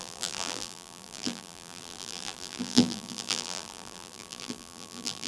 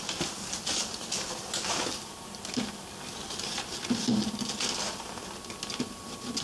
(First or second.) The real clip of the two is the second